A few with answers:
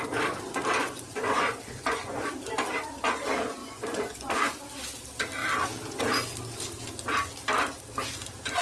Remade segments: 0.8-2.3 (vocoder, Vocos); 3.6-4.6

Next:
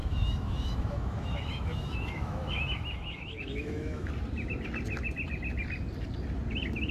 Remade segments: 0.0-4.1 (autoencoder, DAC-VAE)

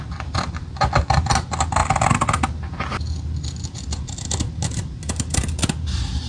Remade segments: none

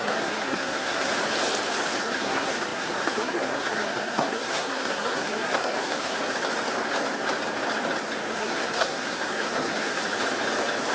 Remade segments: 0.0-1.1 (codec, SNAC); 2.0-6.1; 8.3-10.0

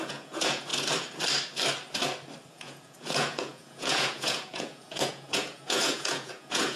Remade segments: 0.0-0.7 (vocoder, Vocos); 2.5-6.8